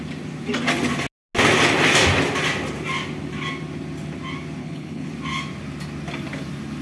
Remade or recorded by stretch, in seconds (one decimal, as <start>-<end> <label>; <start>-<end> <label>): 0.0-4.6 recorded; 4.6-5.1 remade; 5.1-6.8 recorded